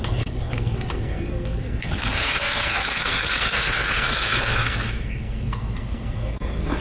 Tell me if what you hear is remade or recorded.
remade